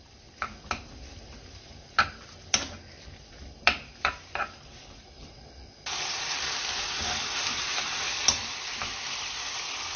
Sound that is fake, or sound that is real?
fake